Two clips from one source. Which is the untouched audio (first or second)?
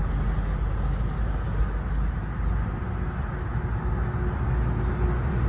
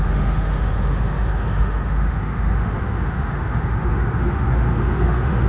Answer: first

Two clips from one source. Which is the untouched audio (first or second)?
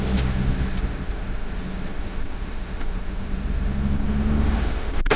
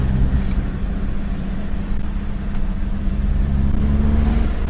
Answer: second